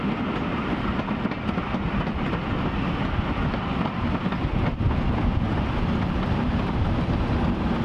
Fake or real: real